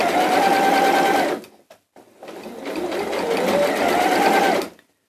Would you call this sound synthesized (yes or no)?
no